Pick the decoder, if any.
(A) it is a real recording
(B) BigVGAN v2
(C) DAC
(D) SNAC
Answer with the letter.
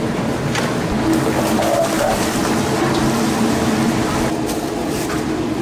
A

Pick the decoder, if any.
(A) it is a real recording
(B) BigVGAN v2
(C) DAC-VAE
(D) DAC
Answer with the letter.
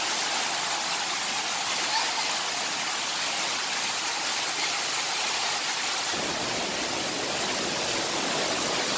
A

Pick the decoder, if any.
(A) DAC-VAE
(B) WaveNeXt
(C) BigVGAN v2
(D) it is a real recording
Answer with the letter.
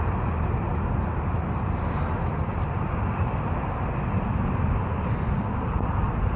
C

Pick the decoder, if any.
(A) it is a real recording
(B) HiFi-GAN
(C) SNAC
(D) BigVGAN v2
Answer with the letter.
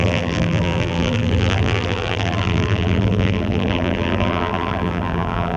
D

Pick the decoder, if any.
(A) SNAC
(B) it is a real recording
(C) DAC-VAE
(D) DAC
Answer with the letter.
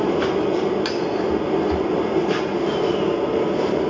B